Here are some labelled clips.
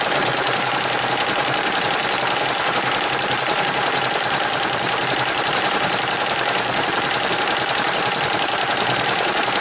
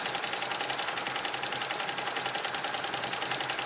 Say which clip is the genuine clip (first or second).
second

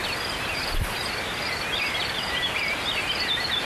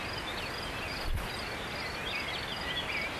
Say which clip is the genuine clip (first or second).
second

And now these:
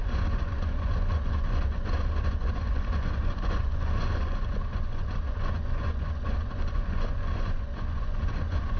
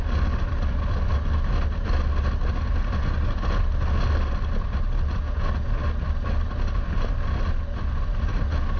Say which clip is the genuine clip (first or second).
second